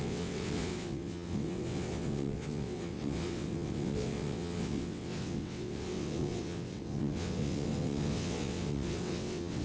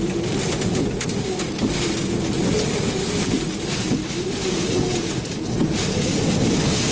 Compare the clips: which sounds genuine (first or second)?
second